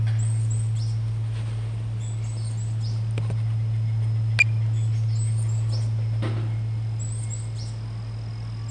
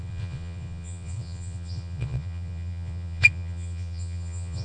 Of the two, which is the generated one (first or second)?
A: second